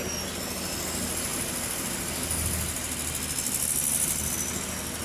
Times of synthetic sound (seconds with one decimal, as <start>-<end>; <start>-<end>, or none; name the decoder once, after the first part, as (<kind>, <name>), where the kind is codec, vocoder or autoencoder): none